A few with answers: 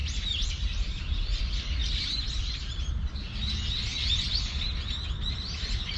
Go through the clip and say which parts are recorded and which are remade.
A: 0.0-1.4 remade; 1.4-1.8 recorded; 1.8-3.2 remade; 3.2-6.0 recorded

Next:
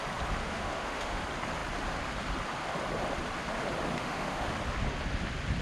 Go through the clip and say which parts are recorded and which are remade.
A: 0.0-0.4 recorded; 0.4-1.2 remade; 1.2-4.0 recorded; 4.0-4.5 remade; 4.5-5.6 recorded

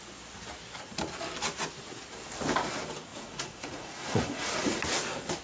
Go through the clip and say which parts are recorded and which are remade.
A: 0.0-3.1 recorded; 3.1-4.8 remade; 4.8-5.4 recorded

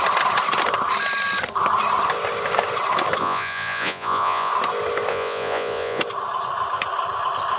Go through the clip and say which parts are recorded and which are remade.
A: 0.0-3.2 recorded; 3.2-4.5 remade; 4.5-5.1 recorded; 5.1-6.0 remade; 6.0-7.6 recorded

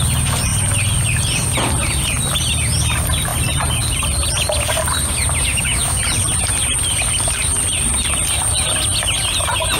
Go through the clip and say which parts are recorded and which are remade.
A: 0.0-5.5 recorded; 5.5-6.0 remade; 6.0-9.8 recorded